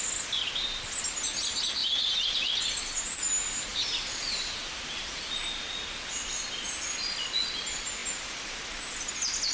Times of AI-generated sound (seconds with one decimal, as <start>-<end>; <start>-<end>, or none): 1.8-2.6; 3.7-5.4